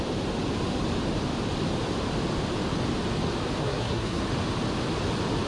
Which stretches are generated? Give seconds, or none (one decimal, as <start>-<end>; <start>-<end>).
3.6-4.2